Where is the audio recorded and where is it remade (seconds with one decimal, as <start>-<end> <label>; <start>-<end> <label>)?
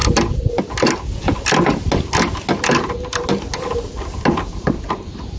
0.0-5.4 recorded